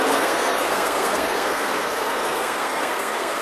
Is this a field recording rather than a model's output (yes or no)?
no